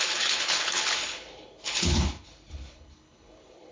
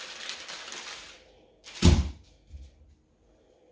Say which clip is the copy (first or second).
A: first